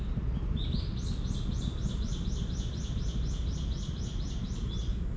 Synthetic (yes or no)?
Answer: no